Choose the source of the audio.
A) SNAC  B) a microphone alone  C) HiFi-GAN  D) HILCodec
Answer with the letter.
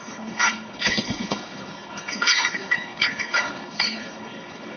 D